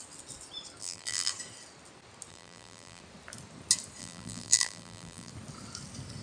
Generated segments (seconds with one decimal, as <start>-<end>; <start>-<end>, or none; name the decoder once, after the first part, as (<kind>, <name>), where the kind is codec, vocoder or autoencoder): 0.8-1.3 (vocoder, BigVGAN v2); 2.3-3.0; 4.0-5.3